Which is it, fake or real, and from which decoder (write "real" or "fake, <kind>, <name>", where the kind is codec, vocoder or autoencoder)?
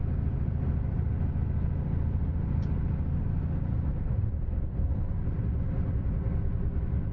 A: real